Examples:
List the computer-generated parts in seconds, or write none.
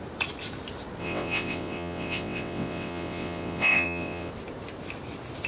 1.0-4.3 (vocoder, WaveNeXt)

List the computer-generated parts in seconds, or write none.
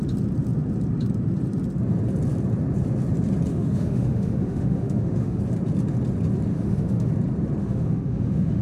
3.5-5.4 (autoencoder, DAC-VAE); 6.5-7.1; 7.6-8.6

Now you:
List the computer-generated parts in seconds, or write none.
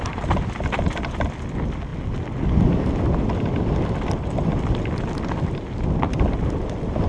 none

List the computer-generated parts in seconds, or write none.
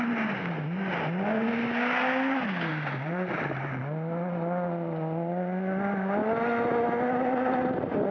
2.7-3.8 (vocoder, BigVGAN v2)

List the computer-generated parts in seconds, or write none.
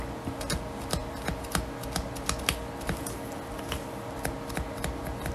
none